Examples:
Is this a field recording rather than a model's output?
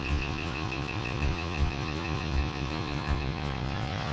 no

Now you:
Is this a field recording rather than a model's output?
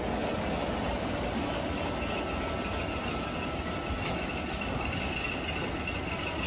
yes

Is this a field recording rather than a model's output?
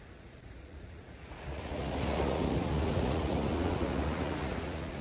no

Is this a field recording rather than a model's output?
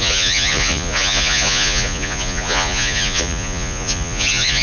no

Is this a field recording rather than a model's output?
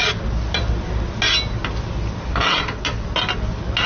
yes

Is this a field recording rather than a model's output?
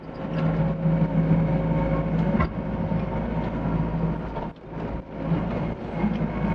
yes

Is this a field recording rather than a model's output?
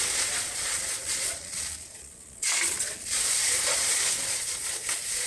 no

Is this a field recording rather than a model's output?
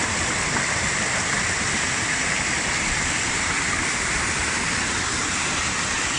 yes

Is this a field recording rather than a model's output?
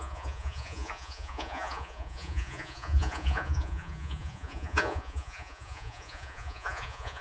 no